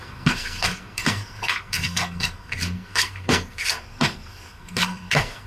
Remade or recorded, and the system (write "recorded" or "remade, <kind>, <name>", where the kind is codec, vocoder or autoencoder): remade, codec, SNAC